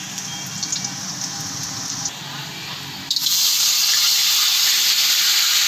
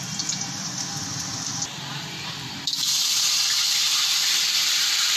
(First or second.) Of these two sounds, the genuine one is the first